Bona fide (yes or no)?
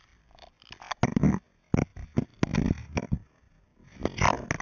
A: yes